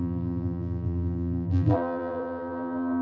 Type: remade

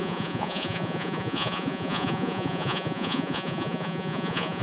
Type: remade